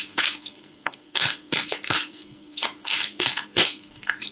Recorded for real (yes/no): no